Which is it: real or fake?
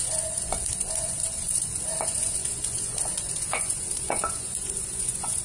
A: fake